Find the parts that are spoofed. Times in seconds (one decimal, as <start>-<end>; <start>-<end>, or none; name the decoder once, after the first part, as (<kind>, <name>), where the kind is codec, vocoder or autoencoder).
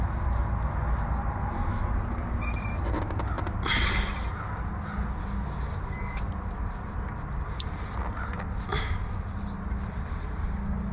none